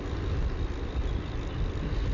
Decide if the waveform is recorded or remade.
recorded